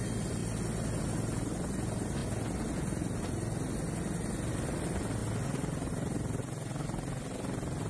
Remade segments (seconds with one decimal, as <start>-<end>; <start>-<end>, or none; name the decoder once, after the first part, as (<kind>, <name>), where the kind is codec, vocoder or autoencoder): none